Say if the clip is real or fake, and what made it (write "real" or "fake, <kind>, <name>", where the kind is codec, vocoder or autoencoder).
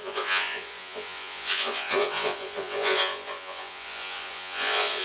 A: fake, vocoder, Vocos